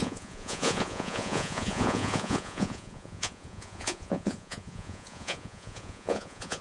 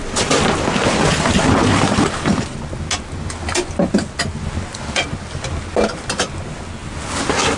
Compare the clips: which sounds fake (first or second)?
first